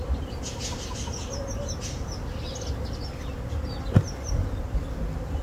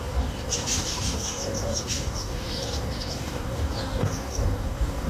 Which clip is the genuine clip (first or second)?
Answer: first